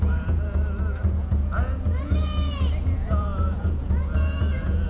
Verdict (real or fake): fake